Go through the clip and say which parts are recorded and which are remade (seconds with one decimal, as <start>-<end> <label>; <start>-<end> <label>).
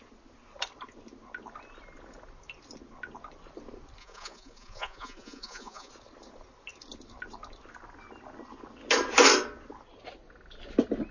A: 0.0-4.0 recorded; 4.0-5.9 remade; 5.9-11.1 recorded